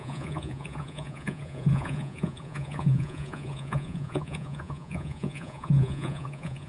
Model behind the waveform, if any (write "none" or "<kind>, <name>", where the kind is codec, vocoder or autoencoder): vocoder, Vocos